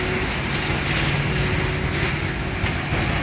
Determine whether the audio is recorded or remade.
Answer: recorded